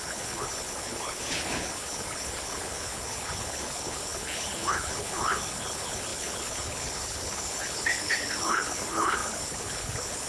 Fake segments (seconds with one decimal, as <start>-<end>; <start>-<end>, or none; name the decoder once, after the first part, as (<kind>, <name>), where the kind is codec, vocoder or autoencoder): 0.0-10.3 (codec, HILCodec)